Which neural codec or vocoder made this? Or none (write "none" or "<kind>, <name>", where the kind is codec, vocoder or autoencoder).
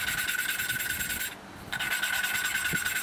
none